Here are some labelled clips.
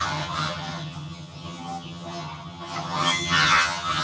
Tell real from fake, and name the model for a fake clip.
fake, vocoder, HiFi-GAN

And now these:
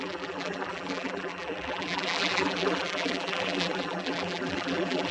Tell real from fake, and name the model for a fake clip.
fake, vocoder, BigVGAN v2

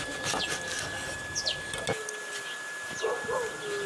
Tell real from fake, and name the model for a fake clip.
real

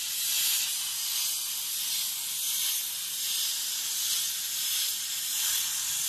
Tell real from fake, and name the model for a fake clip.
real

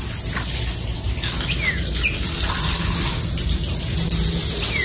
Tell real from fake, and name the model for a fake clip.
real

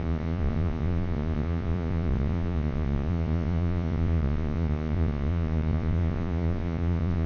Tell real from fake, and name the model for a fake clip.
fake, vocoder, Vocos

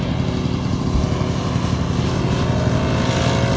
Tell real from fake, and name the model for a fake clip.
real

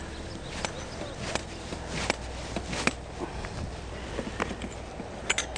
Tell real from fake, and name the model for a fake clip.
real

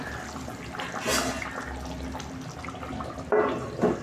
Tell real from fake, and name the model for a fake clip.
real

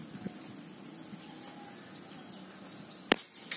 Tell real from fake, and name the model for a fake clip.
real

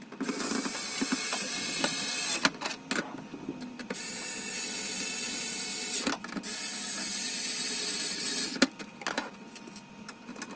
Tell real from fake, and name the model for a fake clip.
real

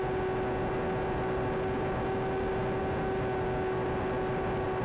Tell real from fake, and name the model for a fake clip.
real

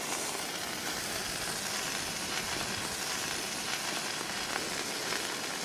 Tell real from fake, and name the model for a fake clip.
real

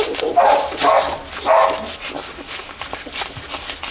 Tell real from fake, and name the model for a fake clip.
real